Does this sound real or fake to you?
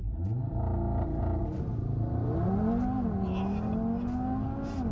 real